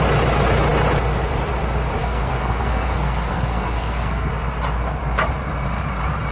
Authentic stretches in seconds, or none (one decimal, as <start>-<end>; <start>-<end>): 0.0-2.0; 4.3-6.3